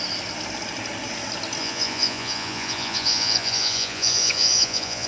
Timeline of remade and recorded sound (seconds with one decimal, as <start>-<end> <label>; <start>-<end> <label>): 0.0-1.6 recorded; 1.6-5.1 remade